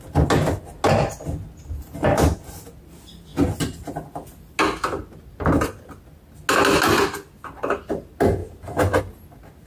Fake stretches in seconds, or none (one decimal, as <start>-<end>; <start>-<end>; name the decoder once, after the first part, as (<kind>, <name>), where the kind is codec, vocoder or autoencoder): none